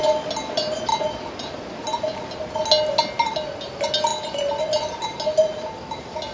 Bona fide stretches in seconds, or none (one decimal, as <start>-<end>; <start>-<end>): 0.0-6.3